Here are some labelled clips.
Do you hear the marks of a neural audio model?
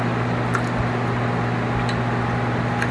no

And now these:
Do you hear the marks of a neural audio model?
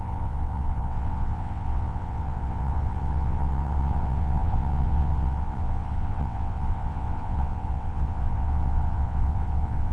yes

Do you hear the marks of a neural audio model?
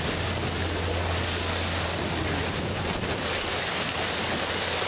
no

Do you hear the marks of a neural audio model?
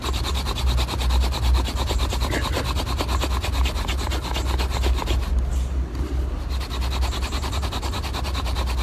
no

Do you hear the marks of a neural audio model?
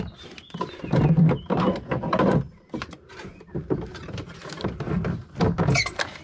no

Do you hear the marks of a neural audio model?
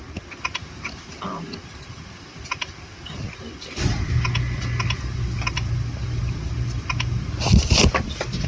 no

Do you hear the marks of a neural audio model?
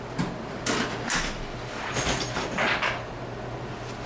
no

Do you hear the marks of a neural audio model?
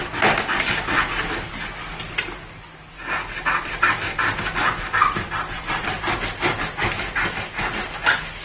no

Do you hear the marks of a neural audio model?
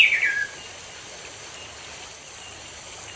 no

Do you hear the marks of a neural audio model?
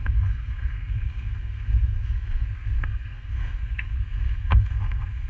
yes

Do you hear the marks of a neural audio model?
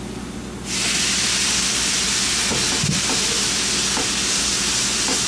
no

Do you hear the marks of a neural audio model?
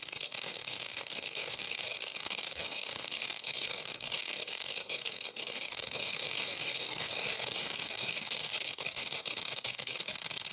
yes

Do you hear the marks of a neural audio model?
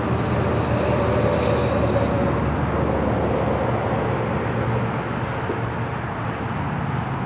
no